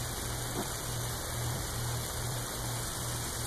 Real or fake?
fake